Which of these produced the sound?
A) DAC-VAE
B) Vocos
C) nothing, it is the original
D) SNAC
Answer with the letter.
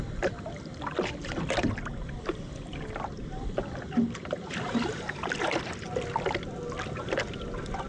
C